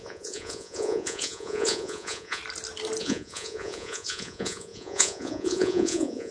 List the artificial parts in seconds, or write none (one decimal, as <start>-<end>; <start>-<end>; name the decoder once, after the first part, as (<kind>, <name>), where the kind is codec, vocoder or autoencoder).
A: 0.0-2.4 (vocoder, Vocos); 3.0-6.3